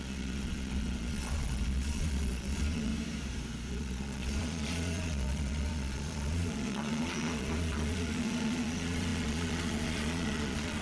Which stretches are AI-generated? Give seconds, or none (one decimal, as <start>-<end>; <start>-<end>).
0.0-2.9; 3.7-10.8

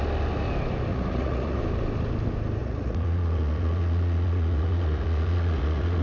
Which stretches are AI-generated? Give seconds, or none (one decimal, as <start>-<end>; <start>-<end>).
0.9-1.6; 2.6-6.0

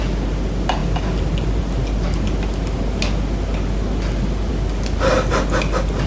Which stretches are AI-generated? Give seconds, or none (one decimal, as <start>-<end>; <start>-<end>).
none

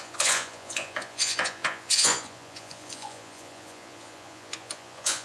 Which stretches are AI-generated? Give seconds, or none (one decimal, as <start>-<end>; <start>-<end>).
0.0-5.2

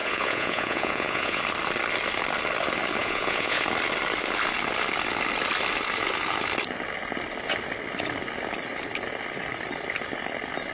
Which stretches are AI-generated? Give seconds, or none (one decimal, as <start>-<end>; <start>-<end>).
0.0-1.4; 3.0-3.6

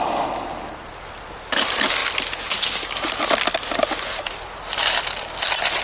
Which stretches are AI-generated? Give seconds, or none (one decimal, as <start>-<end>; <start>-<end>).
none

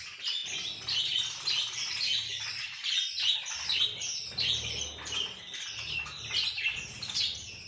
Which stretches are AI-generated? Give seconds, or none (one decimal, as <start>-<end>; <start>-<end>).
none